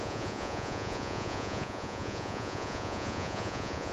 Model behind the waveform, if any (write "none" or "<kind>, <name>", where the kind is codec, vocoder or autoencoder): vocoder, Vocos